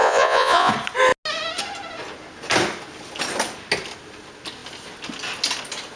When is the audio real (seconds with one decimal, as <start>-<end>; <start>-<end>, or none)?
0.7-6.0